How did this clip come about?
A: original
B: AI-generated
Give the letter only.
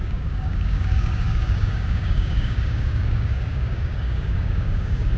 B